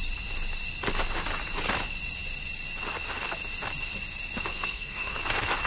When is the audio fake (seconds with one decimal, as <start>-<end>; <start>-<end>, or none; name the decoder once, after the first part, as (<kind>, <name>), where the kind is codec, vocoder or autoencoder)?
4.5-5.2 (codec, SNAC)